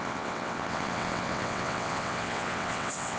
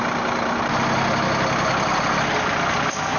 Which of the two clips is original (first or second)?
second